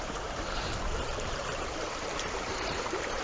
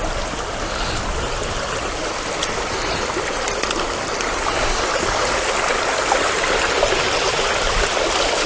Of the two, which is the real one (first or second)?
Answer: second